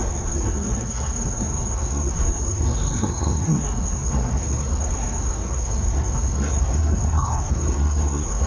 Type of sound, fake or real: fake